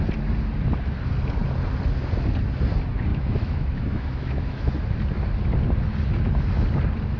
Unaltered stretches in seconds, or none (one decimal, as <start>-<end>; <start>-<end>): 0.0-3.1; 4.7-7.2